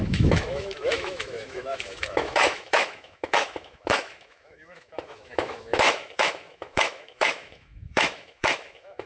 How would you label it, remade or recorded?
remade